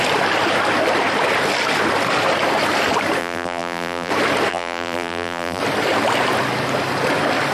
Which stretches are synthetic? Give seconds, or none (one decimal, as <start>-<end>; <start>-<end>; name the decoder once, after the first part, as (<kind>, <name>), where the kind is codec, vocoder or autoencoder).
3.2-4.1 (vocoder, BigVGAN v2); 4.5-5.6